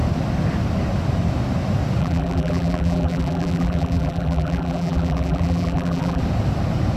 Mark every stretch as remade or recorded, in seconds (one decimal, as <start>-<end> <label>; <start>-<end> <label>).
0.0-2.0 recorded; 2.0-6.2 remade; 6.2-7.0 recorded